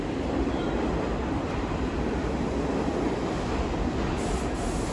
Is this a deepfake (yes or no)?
no